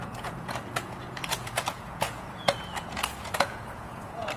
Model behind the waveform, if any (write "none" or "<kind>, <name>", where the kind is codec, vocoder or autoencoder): vocoder, Vocos